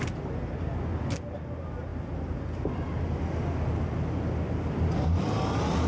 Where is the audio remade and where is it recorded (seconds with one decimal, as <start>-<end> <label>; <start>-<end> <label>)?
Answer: 0.0-5.9 recorded